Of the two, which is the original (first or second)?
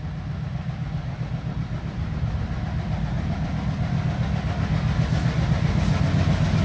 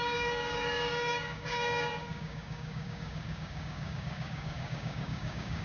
first